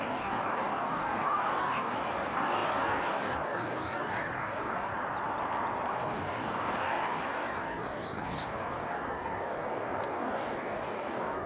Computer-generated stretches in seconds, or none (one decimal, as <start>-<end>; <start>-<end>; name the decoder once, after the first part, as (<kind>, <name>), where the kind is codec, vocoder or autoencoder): 0.0-4.9 (codec, DAC); 5.9-11.5